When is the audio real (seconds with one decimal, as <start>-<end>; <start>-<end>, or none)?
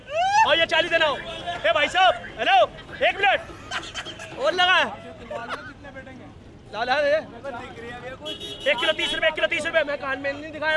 0.0-10.8